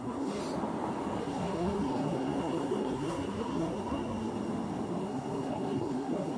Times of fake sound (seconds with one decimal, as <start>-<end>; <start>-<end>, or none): 0.0-0.4; 1.2-4.3; 5.0-6.4